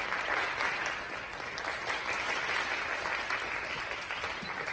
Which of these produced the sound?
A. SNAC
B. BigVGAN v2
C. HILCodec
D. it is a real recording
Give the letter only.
D